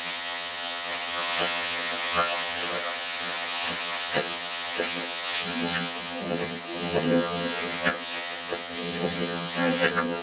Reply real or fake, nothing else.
fake